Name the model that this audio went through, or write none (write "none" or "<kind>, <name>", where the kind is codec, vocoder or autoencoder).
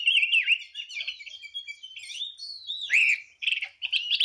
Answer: vocoder, BigVGAN v2